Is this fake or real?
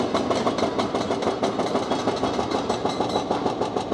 real